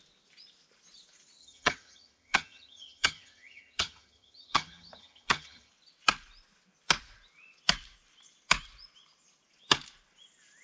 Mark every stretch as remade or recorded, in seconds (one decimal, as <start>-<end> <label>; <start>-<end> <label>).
0.0-1.4 recorded; 1.4-5.7 remade; 5.7-10.6 recorded